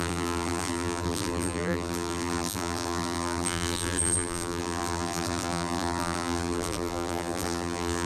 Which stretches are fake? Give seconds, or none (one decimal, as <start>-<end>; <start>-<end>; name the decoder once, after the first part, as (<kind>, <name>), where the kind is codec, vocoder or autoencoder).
0.0-8.1 (vocoder, BigVGAN v2)